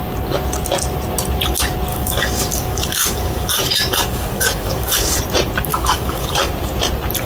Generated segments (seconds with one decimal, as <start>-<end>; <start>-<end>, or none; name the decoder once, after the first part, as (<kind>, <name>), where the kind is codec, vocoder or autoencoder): 1.9-5.2 (codec, DAC); 5.7-6.5